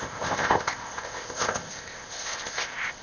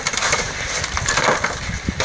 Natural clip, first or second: second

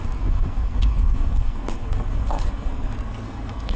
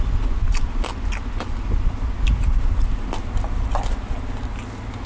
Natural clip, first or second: second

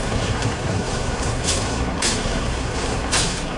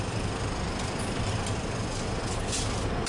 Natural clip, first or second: second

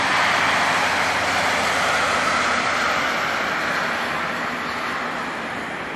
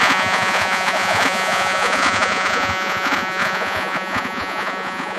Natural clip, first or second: first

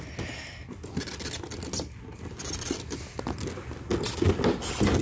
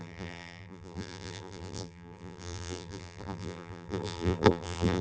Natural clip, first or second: first